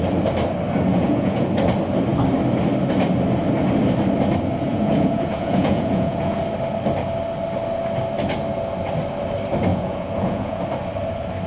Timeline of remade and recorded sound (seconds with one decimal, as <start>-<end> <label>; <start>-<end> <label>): 0.0-0.9 recorded; 0.9-1.5 remade; 1.5-4.7 recorded; 4.7-6.4 remade; 6.4-9.7 recorded; 9.7-10.6 remade; 10.6-11.5 recorded